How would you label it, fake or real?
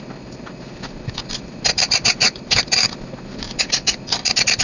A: real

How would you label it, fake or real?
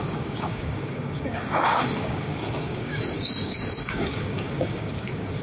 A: fake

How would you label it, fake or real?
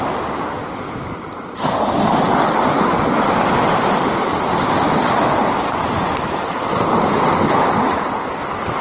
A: real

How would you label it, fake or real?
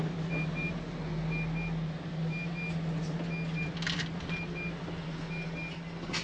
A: real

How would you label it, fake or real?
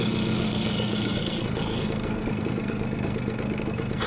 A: fake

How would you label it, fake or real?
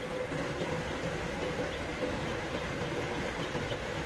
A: real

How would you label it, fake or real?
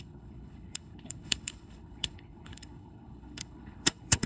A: fake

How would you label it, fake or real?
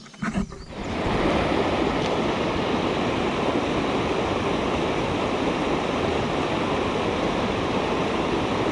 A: real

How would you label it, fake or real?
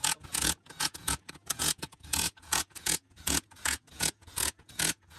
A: fake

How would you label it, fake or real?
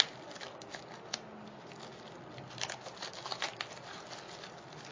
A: real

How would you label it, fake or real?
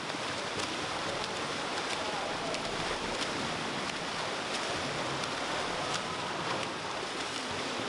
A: fake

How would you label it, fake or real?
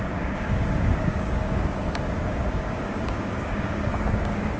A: fake